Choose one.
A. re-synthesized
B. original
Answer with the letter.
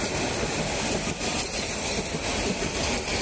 B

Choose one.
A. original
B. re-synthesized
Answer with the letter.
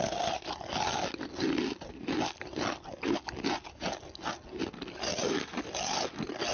A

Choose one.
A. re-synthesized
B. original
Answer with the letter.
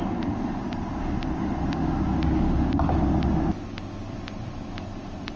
B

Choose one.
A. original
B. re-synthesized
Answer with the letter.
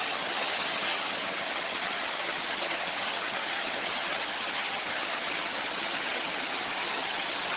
B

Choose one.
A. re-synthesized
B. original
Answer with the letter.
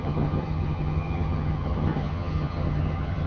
A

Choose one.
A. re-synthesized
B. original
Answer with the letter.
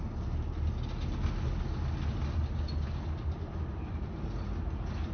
B